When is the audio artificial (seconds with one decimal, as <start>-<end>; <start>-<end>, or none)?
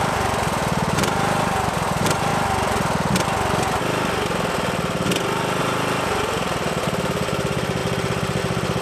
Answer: 0.0-2.3; 5.6-8.8